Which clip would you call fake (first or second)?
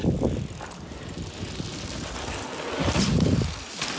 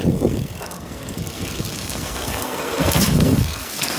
second